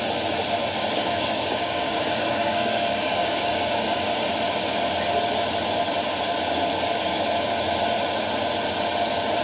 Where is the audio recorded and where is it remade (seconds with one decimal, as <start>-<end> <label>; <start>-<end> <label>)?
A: 0.0-0.6 recorded; 0.6-4.0 remade; 4.0-9.4 recorded